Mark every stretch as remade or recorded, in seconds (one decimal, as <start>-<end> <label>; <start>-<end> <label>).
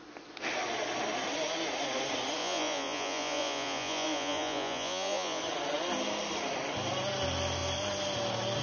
0.0-2.4 recorded; 2.4-5.4 remade; 5.4-8.6 recorded